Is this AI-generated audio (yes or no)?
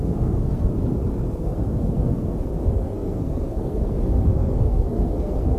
yes